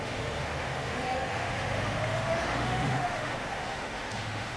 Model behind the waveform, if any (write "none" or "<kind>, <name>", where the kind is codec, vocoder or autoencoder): autoencoder, DAC-VAE